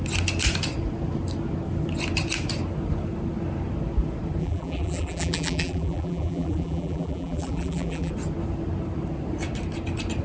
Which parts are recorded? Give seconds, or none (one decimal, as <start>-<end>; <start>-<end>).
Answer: 0.0-4.4; 8.1-10.2